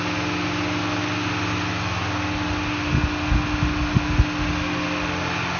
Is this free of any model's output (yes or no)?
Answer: yes